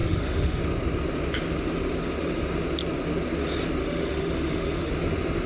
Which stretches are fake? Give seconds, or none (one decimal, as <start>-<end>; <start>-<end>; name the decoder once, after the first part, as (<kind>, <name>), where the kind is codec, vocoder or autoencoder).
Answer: 0.0-0.6 (autoencoder, DAC-VAE); 3.8-4.9

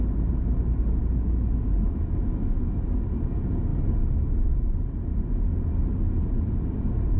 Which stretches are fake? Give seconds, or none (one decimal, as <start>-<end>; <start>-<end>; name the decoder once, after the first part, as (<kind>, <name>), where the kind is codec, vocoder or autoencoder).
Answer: 1.0-2.8 (autoencoder, DAC-VAE)

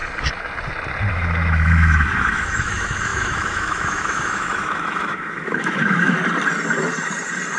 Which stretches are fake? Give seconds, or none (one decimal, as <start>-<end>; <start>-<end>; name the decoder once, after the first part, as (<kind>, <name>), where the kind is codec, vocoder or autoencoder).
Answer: 1.1-6.2 (autoencoder, DAC-VAE)

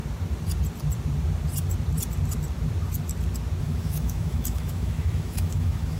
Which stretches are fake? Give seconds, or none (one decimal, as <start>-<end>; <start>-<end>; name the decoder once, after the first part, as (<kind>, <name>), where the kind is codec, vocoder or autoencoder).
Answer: 3.6-6.0 (autoencoder, DAC-VAE)

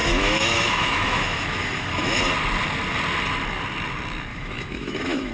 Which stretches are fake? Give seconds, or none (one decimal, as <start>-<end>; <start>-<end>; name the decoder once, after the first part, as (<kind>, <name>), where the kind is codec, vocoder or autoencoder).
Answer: 0.0-2.2 (autoencoder, DAC-VAE); 4.3-5.3

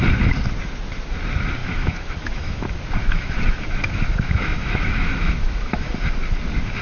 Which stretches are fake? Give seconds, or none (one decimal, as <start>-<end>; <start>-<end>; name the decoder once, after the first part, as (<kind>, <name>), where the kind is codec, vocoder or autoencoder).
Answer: 1.6-2.6 (autoencoder, DAC-VAE); 3.0-5.9

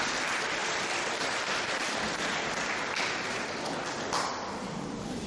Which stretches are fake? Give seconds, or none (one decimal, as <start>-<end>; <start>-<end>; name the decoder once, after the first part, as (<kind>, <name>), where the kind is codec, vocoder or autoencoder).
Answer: none

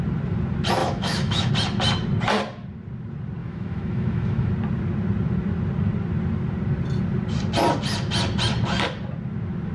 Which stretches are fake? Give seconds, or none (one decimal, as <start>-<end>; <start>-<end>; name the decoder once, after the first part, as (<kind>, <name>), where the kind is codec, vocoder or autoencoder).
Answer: 0.8-1.5 (autoencoder, DAC-VAE); 3.4-4.5